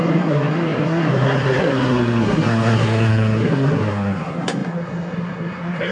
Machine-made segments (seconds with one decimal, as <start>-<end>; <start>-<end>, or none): 0.0-5.9